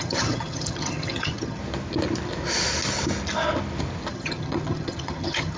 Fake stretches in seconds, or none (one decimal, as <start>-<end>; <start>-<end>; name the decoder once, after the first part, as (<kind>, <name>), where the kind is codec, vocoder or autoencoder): 0.0-1.6 (vocoder, HiFi-GAN); 4.1-5.6

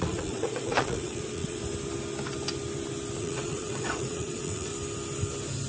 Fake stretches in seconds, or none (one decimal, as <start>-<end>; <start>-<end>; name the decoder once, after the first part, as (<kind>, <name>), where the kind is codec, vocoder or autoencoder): 0.0-1.6 (vocoder, Vocos); 3.2-4.7

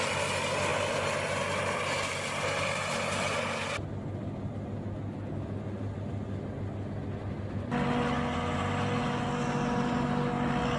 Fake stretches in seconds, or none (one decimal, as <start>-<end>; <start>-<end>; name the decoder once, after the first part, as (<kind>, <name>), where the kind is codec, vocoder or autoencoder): none

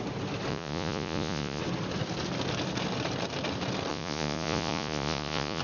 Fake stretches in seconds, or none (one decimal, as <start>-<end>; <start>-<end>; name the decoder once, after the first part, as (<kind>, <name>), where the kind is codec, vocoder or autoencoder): 0.5-1.6 (vocoder, Vocos); 3.9-5.6